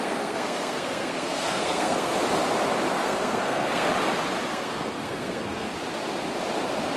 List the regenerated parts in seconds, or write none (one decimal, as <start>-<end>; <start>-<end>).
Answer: 0.0-2.1; 2.9-3.9; 4.5-5.7